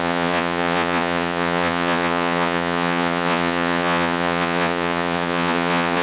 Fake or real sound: fake